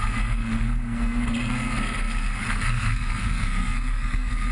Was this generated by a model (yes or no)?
yes